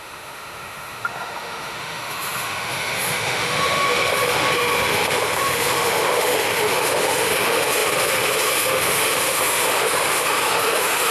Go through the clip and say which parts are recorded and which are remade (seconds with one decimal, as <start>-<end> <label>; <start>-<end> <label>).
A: 0.0-11.1 remade